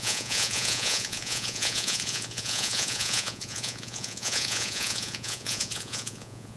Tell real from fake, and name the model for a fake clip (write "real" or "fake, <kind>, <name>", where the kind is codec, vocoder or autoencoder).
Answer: fake, vocoder, Vocos